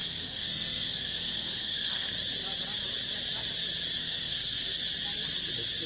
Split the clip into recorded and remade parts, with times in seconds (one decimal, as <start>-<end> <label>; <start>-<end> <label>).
0.0-2.1 remade; 2.1-4.0 recorded; 4.0-4.7 remade; 4.7-5.9 recorded